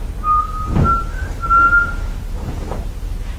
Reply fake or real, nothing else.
real